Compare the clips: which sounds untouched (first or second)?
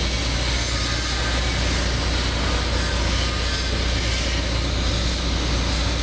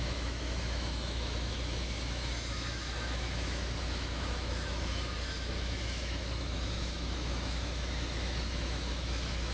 first